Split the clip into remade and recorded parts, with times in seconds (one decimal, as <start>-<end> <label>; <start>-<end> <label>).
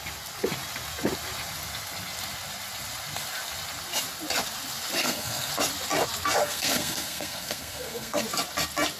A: 0.0-5.0 recorded; 5.0-5.5 remade; 5.5-6.4 recorded; 6.4-8.2 remade; 8.2-9.0 recorded